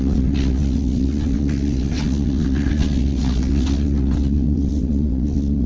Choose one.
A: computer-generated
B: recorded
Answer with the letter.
A